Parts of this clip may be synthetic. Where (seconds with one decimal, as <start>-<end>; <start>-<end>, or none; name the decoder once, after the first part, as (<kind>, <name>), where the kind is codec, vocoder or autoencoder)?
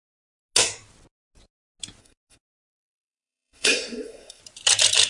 2.0-4.4 (codec, SNAC)